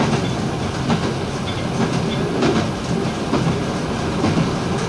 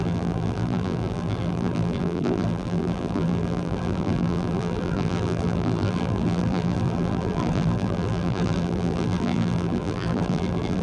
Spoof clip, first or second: second